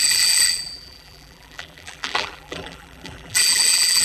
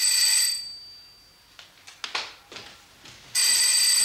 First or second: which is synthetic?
first